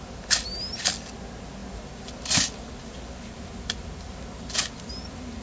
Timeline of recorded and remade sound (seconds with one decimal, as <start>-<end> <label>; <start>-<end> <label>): 0.0-5.4 recorded